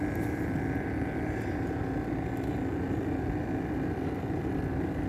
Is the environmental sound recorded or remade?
recorded